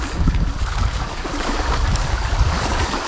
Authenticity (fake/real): fake